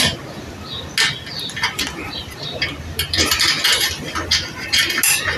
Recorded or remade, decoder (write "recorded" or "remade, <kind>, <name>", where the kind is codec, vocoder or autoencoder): recorded